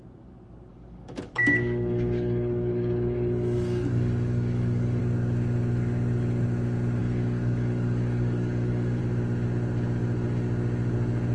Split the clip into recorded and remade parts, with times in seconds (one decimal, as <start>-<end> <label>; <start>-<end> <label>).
0.0-0.7 recorded; 0.7-5.0 remade; 5.0-7.0 recorded; 7.0-9.0 remade; 9.0-11.3 recorded